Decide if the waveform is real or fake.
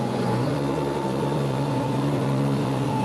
fake